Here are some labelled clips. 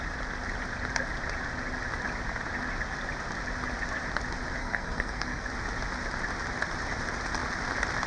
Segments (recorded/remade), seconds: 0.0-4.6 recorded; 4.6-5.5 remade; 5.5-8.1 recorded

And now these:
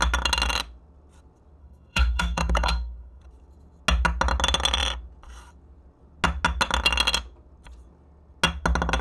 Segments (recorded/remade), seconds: 0.0-1.6 recorded; 1.6-3.2 remade; 3.2-9.0 recorded

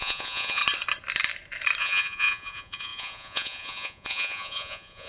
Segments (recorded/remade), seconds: 0.0-0.6 remade; 0.6-1.8 recorded; 1.8-5.1 remade